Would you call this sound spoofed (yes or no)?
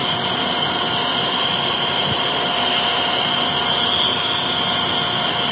no